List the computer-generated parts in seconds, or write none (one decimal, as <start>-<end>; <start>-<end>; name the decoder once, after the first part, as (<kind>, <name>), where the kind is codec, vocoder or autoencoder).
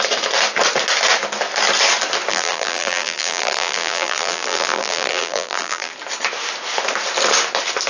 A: 2.3-5.9 (vocoder, BigVGAN v2)